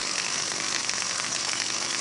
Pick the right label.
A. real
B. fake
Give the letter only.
B